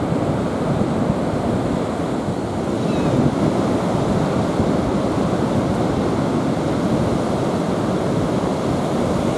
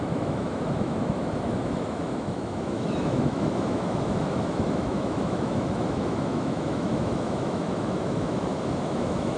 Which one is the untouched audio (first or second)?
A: first